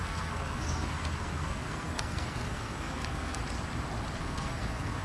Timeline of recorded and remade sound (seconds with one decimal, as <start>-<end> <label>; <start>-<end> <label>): 0.0-3.4 remade; 3.4-4.2 recorded; 4.2-5.0 remade